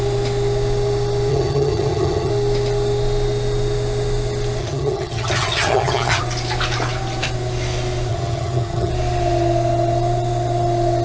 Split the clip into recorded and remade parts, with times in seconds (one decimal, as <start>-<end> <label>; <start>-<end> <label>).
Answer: 0.0-1.3 recorded; 1.3-2.3 remade; 2.3-4.6 recorded; 4.6-6.2 remade; 6.2-8.1 recorded; 8.1-8.9 remade; 8.9-11.0 recorded